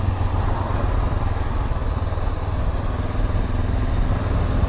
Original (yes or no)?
yes